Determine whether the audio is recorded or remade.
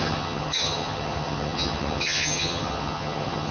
remade